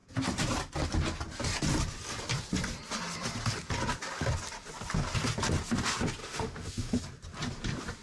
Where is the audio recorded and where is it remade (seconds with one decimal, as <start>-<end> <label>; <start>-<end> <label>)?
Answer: 0.0-6.2 recorded; 6.2-7.0 remade; 7.0-8.0 recorded